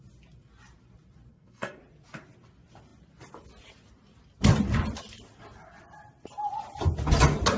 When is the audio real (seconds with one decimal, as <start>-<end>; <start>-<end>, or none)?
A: 0.0-1.3; 1.8-7.6